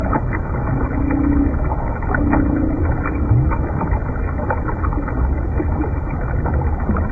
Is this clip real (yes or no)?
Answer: yes